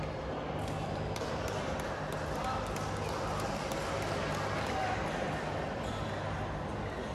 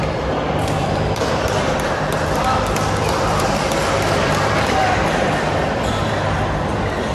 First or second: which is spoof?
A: second